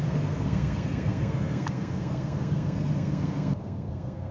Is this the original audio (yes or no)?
no